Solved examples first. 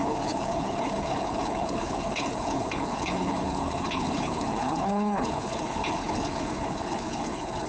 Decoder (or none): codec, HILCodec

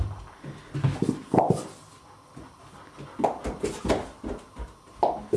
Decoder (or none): none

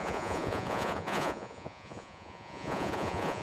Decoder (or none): vocoder, Vocos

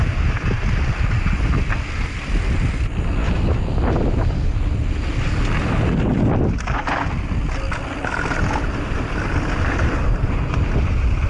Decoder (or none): none